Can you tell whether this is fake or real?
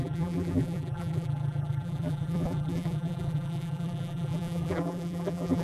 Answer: fake